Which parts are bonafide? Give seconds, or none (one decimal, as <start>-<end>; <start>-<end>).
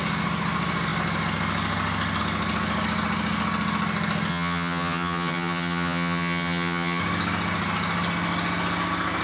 0.0-4.3; 7.0-9.2